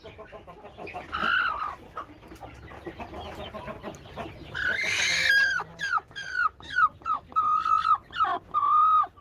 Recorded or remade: recorded